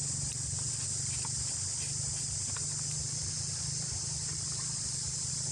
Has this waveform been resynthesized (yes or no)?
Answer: no